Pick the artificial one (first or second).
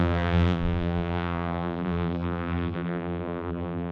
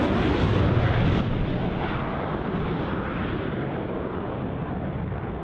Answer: first